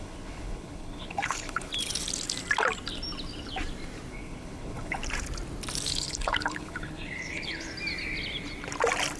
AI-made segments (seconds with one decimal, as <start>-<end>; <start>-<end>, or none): 0.0-1.7; 4.1-5.0; 5.9-7.7